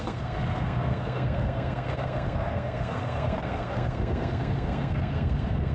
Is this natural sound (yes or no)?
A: no